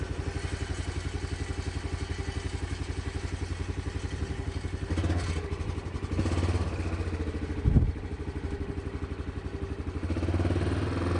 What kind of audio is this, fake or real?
real